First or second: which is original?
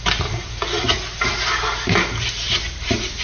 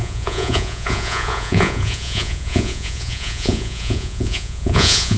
first